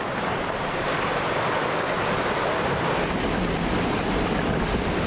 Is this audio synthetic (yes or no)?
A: no